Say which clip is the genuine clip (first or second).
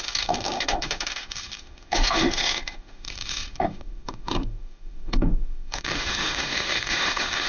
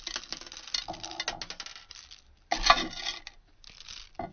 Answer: second